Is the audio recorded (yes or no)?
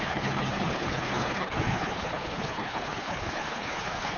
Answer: no